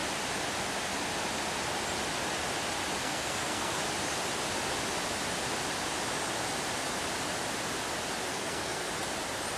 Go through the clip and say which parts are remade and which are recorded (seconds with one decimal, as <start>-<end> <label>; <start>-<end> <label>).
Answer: 0.0-3.0 recorded; 3.0-3.8 remade; 3.8-8.3 recorded; 8.3-8.9 remade; 8.9-9.6 recorded